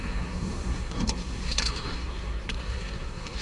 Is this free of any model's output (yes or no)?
no